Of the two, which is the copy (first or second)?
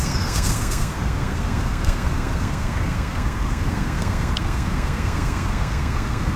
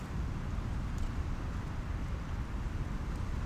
first